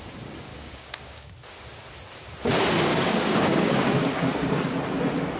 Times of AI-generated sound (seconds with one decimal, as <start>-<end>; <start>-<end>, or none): 0.5-1.3; 2.9-4.3